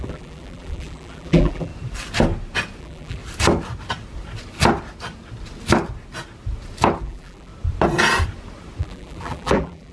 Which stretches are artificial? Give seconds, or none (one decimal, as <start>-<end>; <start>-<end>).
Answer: 0.0-1.7; 2.8-3.2; 7.0-7.5; 8.8-9.9